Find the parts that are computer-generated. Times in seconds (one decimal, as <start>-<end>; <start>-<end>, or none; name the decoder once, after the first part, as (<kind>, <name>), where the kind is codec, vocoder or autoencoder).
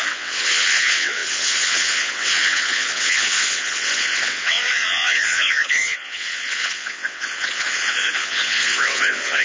0.0-9.4 (vocoder, WaveNeXt)